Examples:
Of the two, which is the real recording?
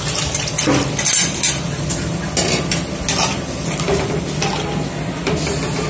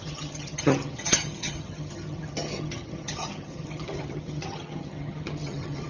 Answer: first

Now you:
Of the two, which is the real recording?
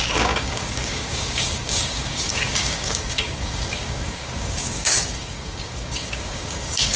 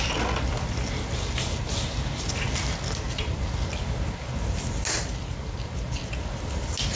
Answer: second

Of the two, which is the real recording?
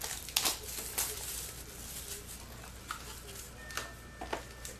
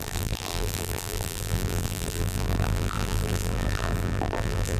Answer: first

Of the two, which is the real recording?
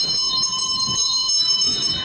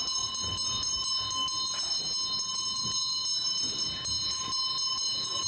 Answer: second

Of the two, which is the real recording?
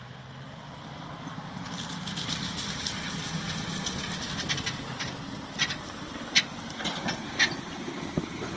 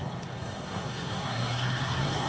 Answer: first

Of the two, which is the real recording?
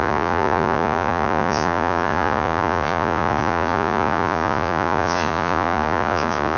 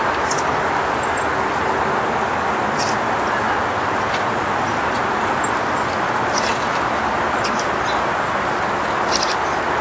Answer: second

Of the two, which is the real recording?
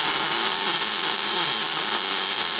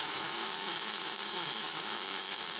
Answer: first